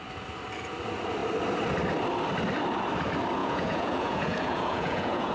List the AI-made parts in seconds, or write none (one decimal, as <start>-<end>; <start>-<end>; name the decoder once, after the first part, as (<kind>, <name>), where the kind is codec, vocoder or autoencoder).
3.4-5.3 (vocoder, Vocos)